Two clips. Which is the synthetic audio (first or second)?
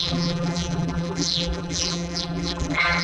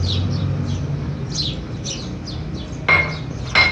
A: first